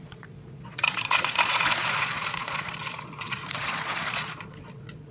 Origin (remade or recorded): remade